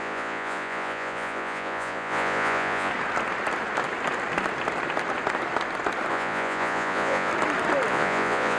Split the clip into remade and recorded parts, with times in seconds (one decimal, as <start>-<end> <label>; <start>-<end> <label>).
0.0-2.9 remade; 2.9-6.1 recorded; 6.1-7.3 remade; 7.3-7.9 recorded; 7.9-8.6 remade